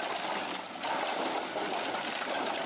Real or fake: real